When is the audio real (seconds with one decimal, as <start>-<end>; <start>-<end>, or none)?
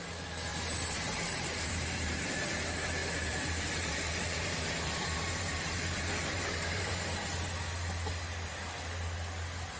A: 0.0-0.5; 2.3-3.0; 6.9-9.8